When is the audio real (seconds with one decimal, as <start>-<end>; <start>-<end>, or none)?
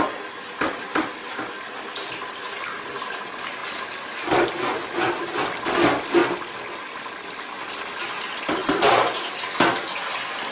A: 0.0-8.6; 9.3-10.5